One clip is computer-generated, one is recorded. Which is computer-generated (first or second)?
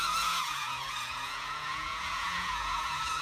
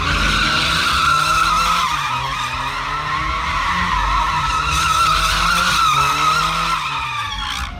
first